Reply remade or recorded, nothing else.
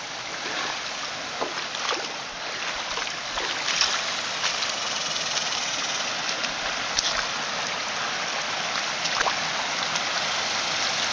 recorded